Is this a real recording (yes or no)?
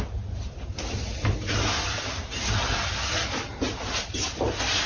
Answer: yes